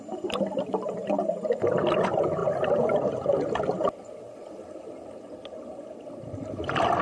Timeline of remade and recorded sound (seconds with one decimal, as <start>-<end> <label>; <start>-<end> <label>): 0.0-7.0 recorded